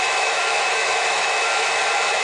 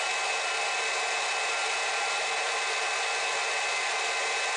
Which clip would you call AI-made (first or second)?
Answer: first